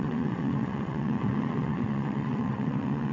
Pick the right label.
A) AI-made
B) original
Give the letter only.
A